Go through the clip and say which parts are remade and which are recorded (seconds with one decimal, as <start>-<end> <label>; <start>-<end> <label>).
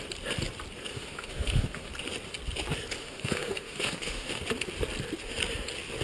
0.0-0.9 recorded; 0.9-1.9 remade; 1.9-3.0 recorded; 3.0-4.4 remade; 4.4-6.0 recorded